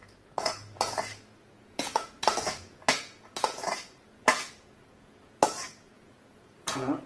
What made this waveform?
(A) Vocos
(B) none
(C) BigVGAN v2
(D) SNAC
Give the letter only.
A